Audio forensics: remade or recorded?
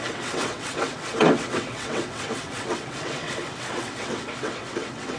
remade